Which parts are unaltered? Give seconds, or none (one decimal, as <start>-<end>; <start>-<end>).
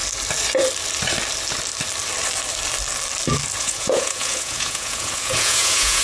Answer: 0.0-3.6